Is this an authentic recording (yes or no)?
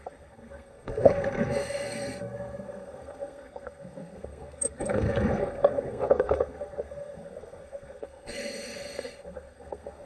no